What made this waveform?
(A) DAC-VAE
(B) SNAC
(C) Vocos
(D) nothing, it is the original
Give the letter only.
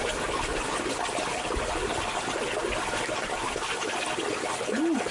D